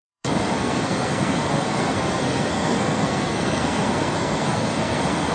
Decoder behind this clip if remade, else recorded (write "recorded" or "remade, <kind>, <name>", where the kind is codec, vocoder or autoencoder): remade, codec, SNAC